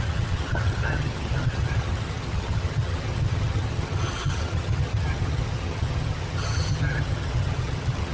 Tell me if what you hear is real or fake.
fake